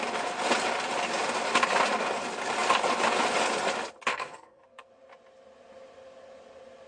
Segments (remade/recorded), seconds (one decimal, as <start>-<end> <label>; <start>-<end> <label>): 0.0-4.1 recorded; 4.1-4.9 remade; 4.9-6.9 recorded